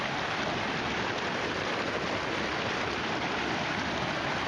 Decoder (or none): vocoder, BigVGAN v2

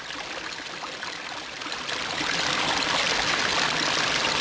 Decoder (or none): none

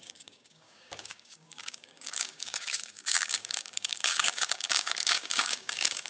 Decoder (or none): codec, DAC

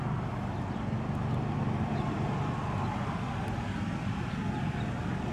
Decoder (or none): none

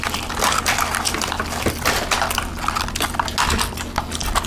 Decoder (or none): none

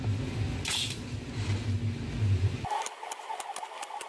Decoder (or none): none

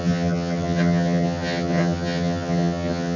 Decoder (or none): vocoder, HiFi-GAN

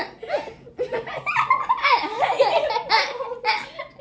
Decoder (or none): none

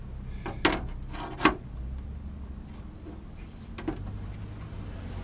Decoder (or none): none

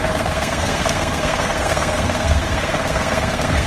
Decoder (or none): codec, SNAC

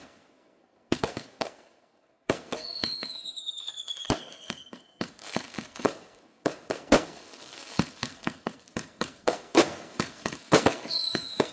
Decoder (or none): codec, SNAC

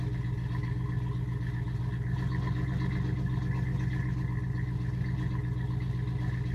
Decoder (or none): none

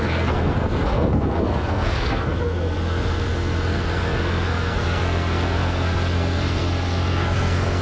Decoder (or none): codec, SNAC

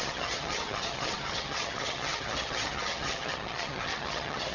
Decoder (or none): vocoder, HiFi-GAN